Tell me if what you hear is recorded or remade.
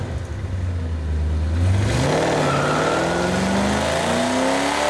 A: recorded